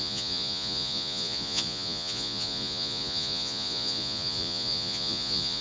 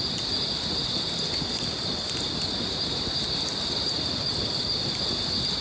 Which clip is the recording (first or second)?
second